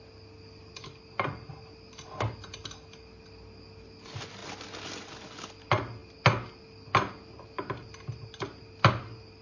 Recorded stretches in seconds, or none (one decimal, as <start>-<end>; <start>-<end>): 0.0-9.4